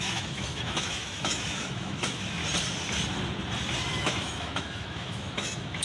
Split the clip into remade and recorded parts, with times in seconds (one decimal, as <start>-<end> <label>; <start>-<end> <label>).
0.0-2.4 remade; 2.4-4.0 recorded; 4.0-5.8 remade